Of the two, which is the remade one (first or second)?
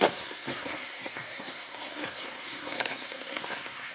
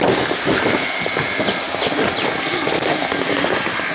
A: first